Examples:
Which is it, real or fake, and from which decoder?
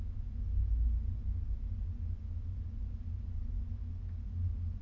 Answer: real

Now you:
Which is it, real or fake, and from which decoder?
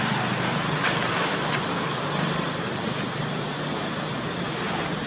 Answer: real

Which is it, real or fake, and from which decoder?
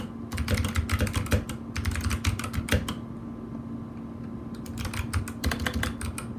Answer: real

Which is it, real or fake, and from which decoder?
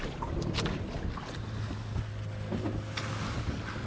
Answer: real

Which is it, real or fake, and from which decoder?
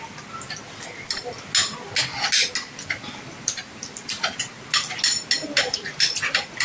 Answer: real